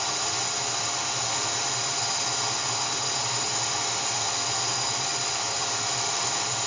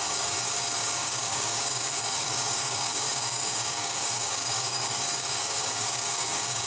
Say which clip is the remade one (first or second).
second